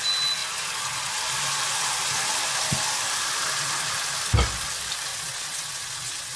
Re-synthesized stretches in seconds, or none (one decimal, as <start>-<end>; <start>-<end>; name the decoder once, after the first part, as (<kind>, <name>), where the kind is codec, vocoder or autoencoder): 5.1-6.4 (vocoder, WaveNeXt)